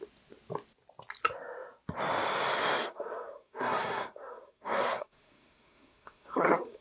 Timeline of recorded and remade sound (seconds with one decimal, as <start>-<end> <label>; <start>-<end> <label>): 0.0-2.8 recorded; 2.8-6.8 remade